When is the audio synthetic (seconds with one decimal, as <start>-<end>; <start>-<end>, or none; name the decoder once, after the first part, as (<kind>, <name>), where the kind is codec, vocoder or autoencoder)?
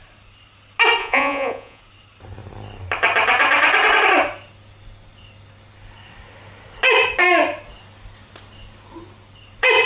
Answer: 1.0-1.8 (vocoder, Vocos)